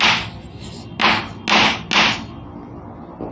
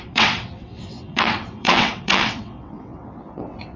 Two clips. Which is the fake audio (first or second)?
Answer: second